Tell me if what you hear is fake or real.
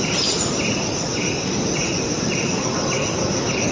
real